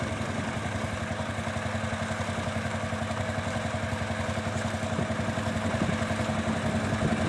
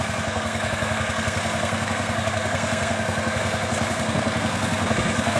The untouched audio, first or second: first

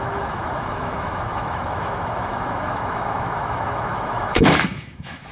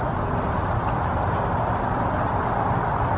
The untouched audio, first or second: second